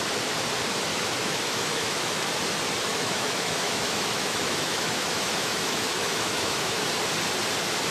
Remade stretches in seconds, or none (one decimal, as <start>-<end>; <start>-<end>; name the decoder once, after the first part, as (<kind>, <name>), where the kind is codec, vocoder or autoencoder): 0.9-2.3 (autoencoder, DAC-VAE); 2.9-6.8